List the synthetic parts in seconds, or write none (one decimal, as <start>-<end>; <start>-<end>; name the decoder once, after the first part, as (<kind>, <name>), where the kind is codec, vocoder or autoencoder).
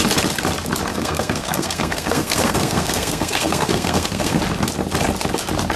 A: 0.9-4.4 (codec, SNAC)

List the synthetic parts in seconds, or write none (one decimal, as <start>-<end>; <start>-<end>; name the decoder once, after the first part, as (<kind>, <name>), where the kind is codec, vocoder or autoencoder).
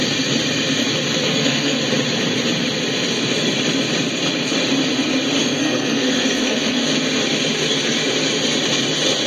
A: 1.3-1.8 (codec, SNAC); 5.4-6.9